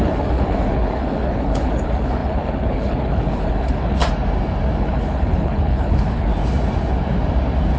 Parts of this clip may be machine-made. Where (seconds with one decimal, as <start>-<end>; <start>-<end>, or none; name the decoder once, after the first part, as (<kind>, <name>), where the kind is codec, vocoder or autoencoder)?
0.0-4.0 (codec, HILCodec); 4.8-6.3